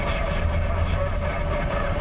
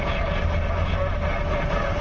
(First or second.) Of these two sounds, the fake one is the first